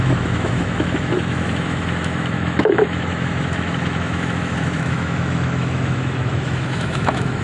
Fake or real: fake